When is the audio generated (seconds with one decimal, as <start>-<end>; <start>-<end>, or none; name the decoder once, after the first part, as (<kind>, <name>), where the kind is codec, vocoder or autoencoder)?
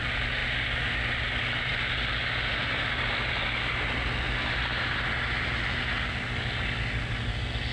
none